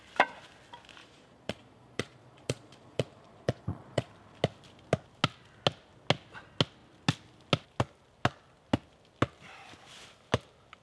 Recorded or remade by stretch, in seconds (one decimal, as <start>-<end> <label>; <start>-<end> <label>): 0.0-1.0 recorded; 1.0-4.1 remade; 4.1-10.8 recorded